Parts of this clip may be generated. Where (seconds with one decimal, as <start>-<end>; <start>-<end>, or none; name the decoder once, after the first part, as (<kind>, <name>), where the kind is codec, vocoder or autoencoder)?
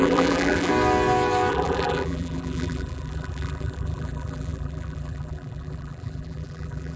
0.0-0.7 (vocoder, BigVGAN v2); 1.5-7.0